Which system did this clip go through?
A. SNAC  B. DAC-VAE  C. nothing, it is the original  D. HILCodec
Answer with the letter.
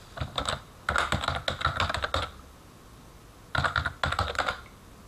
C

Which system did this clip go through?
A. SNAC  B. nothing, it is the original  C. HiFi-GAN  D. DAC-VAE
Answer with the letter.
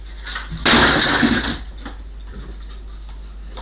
B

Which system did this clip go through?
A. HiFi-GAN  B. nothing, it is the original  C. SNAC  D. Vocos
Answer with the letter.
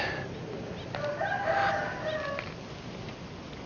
B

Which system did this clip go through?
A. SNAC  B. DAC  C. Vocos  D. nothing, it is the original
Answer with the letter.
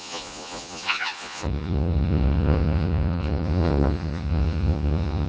C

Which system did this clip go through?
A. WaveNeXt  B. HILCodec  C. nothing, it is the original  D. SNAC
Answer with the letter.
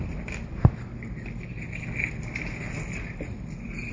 C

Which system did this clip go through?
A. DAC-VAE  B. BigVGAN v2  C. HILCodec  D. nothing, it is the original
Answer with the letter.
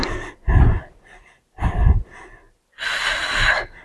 D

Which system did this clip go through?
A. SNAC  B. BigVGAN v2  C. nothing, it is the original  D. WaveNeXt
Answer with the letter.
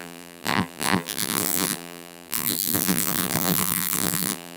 B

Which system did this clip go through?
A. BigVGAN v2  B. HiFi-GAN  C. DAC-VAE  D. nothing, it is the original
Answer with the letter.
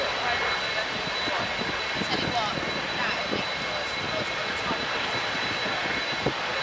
D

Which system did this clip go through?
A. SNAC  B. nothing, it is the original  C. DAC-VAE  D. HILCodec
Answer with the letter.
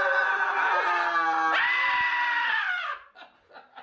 B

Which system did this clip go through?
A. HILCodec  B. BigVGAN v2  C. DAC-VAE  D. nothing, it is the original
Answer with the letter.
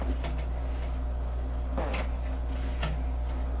D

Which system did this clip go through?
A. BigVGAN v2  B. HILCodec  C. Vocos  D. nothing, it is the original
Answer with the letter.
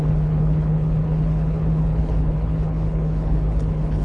B